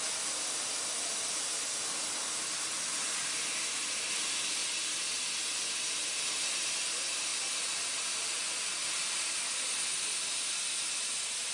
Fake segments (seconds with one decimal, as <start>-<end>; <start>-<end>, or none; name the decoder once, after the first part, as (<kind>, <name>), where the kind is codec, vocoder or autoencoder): none